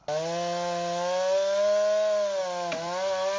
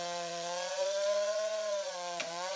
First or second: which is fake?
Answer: second